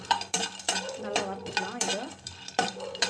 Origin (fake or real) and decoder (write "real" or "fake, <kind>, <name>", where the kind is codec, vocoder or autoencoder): fake, vocoder, BigVGAN v2